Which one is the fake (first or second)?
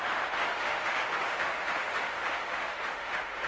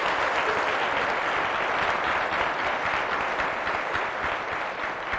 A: first